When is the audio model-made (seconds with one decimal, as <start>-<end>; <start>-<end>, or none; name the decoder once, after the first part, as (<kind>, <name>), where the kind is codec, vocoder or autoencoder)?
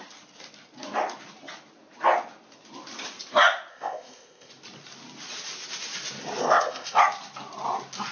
3.7-4.5 (codec, ZipCodec); 6.4-7.0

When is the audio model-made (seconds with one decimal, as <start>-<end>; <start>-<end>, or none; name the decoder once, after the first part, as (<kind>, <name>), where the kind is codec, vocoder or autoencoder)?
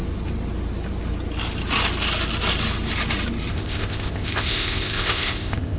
3.5-5.8 (codec, ZipCodec)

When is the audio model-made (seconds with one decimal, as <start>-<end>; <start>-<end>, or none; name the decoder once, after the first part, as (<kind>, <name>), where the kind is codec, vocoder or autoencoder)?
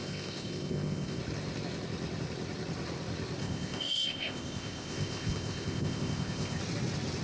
0.0-1.2 (codec, ZipCodec); 3.4-6.6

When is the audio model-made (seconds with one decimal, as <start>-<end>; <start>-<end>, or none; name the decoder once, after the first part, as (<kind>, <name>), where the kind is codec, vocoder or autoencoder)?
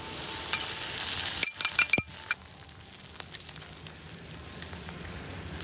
none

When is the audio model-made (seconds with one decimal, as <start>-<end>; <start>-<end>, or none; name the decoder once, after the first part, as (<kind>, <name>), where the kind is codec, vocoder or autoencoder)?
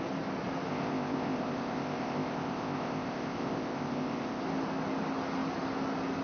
0.7-4.4 (codec, ZipCodec)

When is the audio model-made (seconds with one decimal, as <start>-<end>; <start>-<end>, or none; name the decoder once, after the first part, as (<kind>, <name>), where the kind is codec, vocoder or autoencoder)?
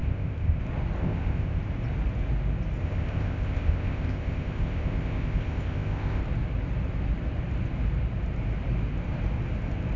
0.0-0.6 (codec, ZipCodec); 1.0-1.6; 2.8-6.2